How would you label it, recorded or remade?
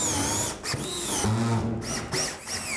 recorded